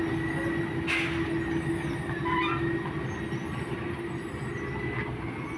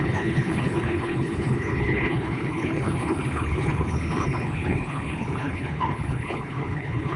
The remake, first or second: second